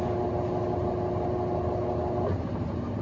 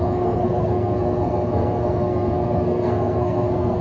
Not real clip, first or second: second